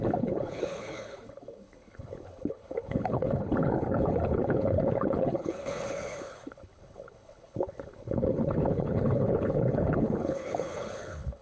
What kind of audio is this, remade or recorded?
remade